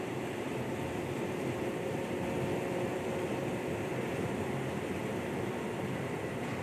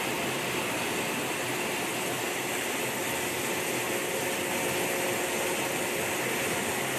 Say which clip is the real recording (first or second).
second